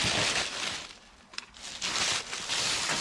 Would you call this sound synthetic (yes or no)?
no